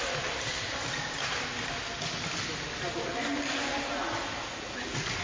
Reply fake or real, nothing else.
real